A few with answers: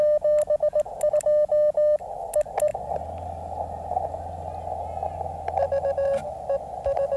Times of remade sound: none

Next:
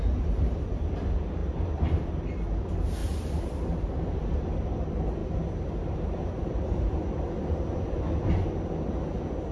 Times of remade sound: 3.0-4.0 (vocoder, BigVGAN v2); 5.2-7.9

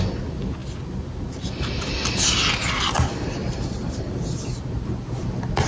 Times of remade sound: none

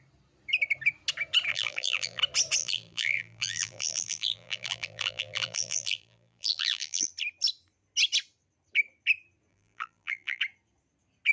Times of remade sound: 1.5-2.2 (vocoder, BigVGAN v2); 2.6-7.1; 9.5-10.4

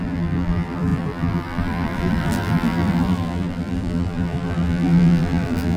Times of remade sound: 0.0-5.8 (vocoder, BigVGAN v2)